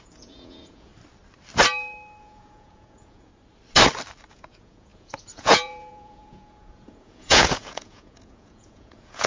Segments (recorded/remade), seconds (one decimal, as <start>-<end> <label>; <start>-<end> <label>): 0.0-0.9 remade; 0.9-2.2 recorded; 2.2-3.3 remade; 3.3-4.3 recorded; 4.3-9.3 remade